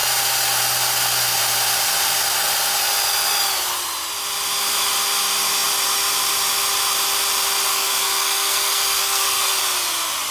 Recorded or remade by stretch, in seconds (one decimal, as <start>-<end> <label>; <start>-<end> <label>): 0.0-7.7 recorded; 7.7-9.6 remade; 9.6-10.3 recorded